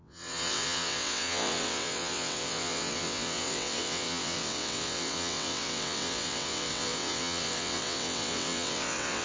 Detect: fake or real fake